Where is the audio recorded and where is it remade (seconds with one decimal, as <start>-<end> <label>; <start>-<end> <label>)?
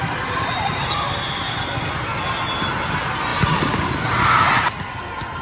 0.0-5.4 recorded